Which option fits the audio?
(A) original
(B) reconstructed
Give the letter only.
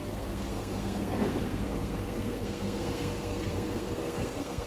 B